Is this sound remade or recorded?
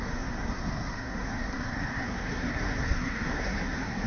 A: remade